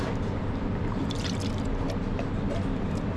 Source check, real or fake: real